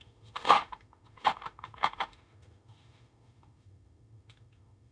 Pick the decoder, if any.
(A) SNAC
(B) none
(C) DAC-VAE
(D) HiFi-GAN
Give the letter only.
C